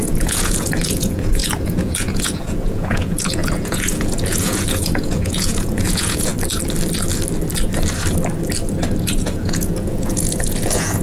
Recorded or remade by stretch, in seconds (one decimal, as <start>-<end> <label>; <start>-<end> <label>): 0.0-6.3 remade; 6.3-9.0 recorded; 9.0-11.0 remade